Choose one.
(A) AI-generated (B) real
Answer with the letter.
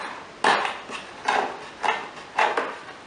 B